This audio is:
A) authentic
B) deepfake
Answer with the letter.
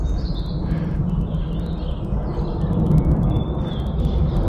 A